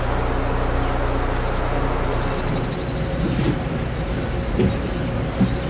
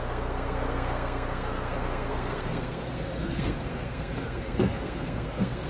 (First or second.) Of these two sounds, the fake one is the second